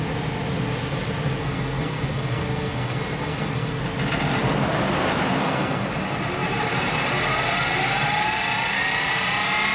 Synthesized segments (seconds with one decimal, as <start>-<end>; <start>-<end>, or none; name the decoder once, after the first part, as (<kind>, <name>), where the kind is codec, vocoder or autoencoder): 1.4-3.8 (codec, SNAC); 5.4-5.9